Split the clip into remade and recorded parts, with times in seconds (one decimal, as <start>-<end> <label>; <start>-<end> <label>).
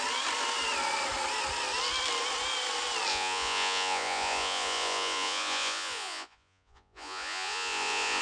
0.0-3.1 recorded; 3.1-8.2 remade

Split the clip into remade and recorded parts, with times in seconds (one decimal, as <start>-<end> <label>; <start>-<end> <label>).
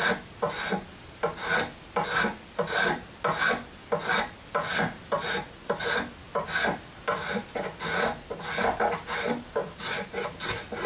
0.0-10.9 recorded